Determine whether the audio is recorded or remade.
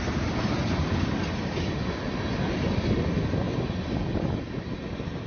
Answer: recorded